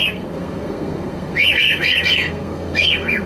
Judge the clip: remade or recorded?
remade